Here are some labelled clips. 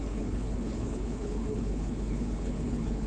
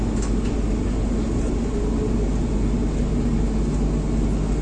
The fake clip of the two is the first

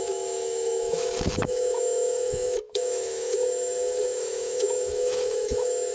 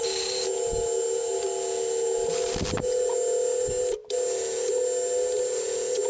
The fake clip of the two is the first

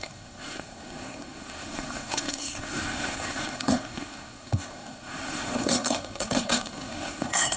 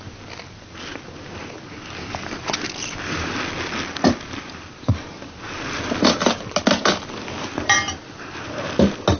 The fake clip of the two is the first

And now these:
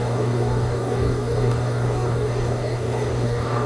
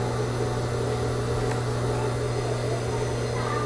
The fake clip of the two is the first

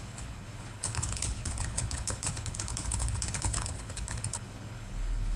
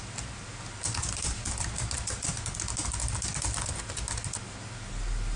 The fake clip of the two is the first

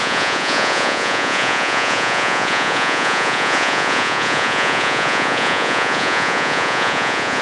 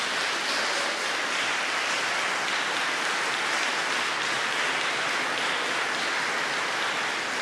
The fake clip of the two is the first